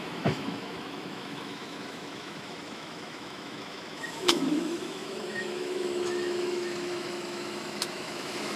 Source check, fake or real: fake